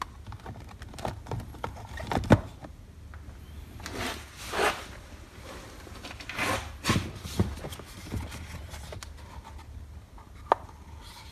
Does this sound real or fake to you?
real